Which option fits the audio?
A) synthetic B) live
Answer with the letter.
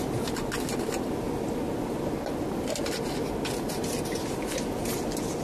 B